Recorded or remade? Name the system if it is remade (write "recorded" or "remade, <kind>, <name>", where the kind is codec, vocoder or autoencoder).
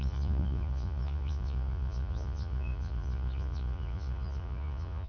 remade, vocoder, Vocos